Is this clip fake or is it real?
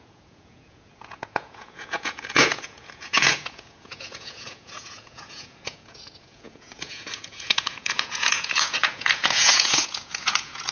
fake